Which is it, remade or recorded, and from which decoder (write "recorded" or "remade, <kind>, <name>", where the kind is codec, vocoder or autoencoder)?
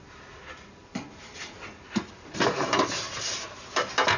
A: remade, vocoder, BigVGAN v2